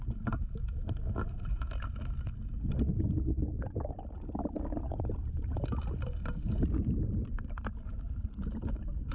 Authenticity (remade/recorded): recorded